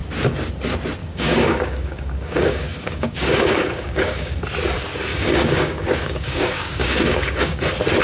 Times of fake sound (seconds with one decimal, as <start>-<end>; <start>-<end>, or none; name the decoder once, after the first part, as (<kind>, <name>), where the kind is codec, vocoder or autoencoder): 1.0-4.4 (codec, DAC); 5.1-7.6